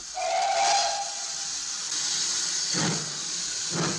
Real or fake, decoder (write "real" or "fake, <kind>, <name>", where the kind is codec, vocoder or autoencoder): real